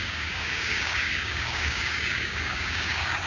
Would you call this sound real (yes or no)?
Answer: no